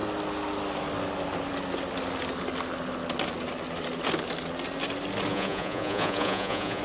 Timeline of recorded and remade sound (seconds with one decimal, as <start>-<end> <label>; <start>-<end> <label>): 0.0-5.3 recorded; 5.3-6.8 remade